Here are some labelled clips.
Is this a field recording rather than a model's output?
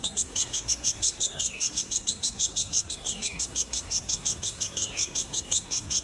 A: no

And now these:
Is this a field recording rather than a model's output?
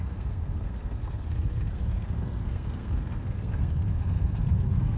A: no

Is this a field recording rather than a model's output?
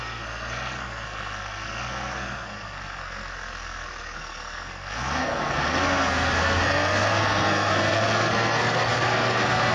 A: no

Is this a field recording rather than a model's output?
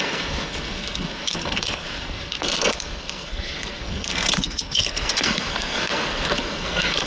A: no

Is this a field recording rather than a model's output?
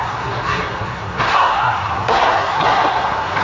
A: no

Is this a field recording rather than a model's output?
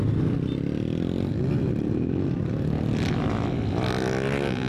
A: yes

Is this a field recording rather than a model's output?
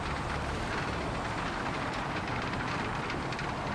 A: yes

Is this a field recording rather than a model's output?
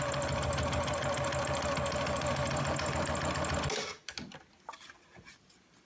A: yes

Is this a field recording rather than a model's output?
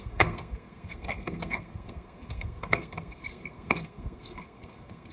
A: no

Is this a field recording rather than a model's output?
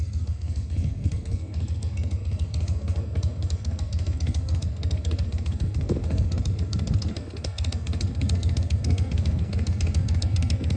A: no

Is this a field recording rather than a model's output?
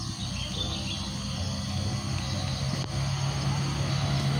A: yes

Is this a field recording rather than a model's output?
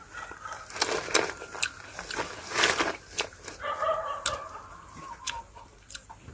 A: yes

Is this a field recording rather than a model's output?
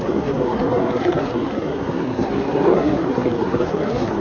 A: no